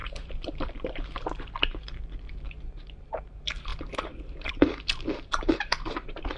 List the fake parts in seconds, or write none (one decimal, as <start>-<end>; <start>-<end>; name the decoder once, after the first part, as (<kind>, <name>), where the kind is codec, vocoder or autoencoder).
0.0-6.4 (vocoder, BigVGAN v2)